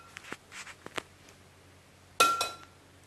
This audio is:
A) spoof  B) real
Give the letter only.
B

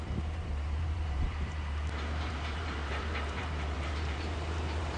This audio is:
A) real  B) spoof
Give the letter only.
B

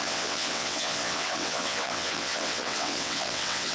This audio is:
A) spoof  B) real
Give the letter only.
A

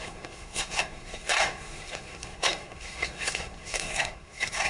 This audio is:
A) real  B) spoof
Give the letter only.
B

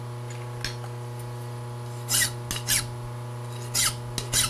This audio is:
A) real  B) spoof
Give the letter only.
A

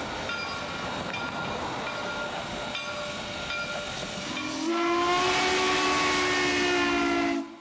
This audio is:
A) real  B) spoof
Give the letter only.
A